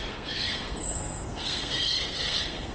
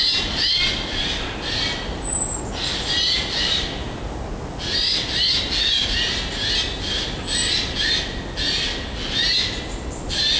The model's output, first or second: first